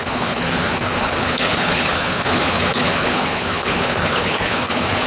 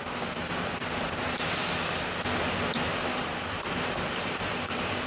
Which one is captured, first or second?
second